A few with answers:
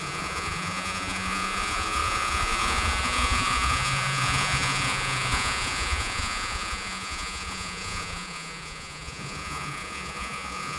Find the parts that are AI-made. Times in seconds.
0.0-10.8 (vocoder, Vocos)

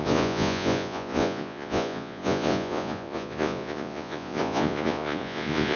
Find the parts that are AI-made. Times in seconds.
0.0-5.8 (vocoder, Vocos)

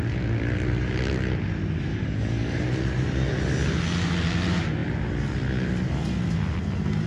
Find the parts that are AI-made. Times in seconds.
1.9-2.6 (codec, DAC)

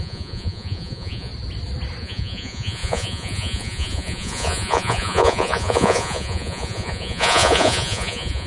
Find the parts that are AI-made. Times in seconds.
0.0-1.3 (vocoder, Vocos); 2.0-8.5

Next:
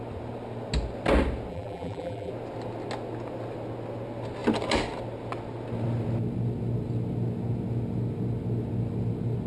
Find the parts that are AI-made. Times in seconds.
1.5-2.3 (vocoder, BigVGAN v2)

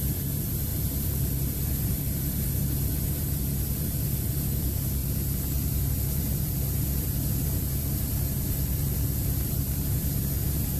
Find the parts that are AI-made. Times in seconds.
0.0-10.8 (vocoder, BigVGAN v2)

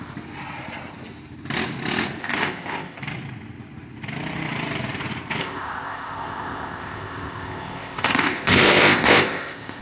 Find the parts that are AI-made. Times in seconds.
2.2-3.0 (codec, ZipCodec); 5.4-9.8